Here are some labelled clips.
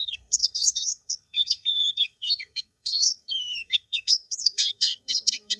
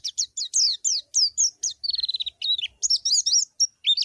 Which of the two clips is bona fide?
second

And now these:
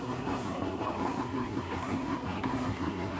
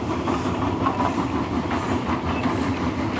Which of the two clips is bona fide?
second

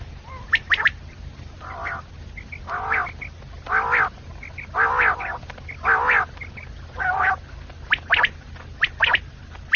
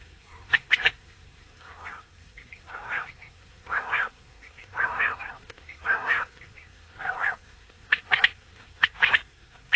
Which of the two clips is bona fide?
first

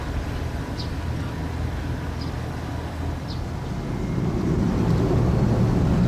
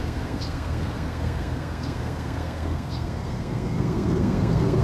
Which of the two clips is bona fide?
first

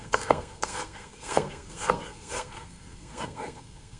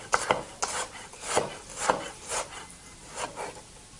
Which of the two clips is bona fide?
second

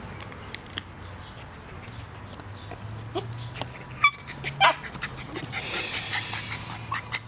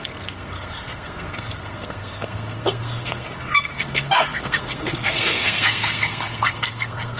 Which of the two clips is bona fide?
first